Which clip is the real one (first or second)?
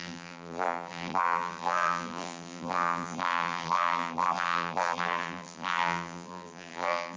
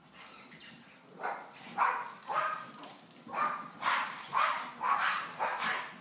second